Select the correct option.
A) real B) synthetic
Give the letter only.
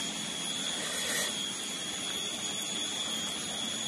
A